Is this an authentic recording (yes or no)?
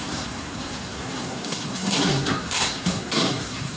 no